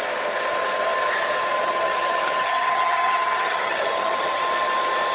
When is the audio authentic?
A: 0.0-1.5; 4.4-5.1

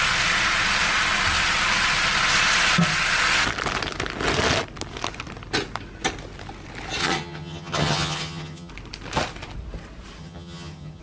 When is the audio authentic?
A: 0.0-7.0; 8.7-10.2

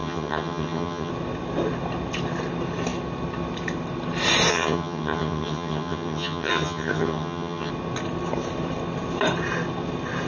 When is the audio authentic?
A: 1.1-4.5; 7.7-10.3

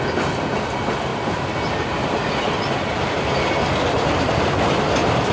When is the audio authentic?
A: 0.0-5.3

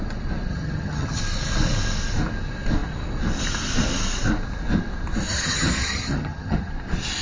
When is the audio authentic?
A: 0.0-0.5; 1.2-5.3; 6.7-7.2

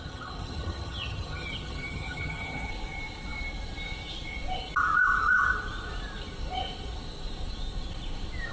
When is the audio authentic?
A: 2.7-8.5

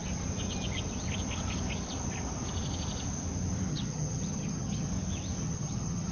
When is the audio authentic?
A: 0.0-3.7; 4.9-5.4

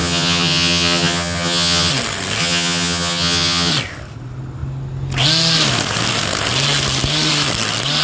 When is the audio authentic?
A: 1.9-2.4; 3.7-8.0